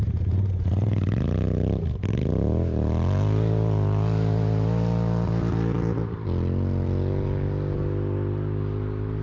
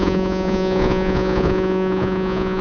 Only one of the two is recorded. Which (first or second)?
first